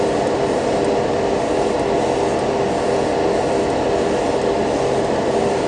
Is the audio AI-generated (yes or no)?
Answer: no